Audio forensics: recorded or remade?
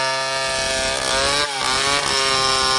recorded